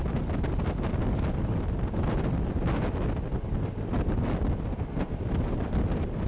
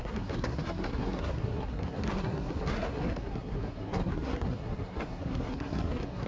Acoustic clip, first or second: first